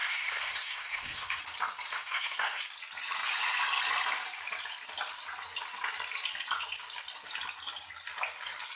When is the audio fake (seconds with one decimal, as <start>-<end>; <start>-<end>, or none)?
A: 0.0-1.4; 1.9-2.6